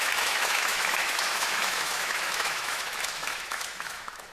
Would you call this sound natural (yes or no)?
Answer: no